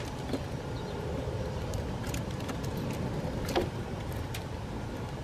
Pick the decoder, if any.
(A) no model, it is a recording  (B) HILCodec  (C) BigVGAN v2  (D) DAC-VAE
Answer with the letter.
A